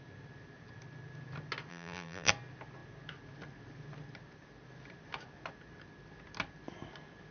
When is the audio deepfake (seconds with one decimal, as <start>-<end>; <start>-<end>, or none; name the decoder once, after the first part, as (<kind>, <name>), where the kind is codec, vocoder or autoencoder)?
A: 1.7-2.3 (vocoder, BigVGAN v2)